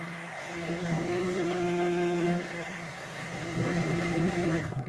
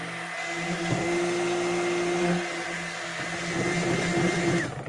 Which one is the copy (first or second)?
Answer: first